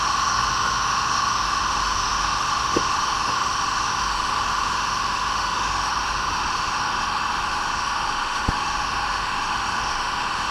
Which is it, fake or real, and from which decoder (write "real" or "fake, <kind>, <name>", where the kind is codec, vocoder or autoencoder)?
fake, autoencoder, DAC-VAE